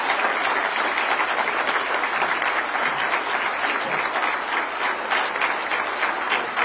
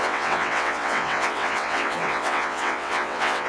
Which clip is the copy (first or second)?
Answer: second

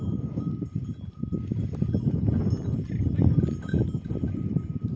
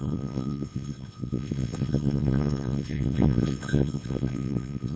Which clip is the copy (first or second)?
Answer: second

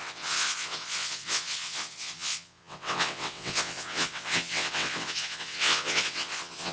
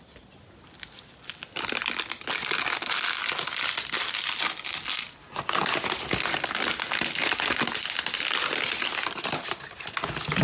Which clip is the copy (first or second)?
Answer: first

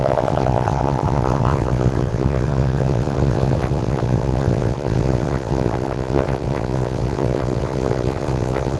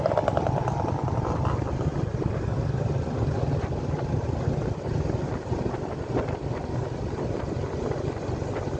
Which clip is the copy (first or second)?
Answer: first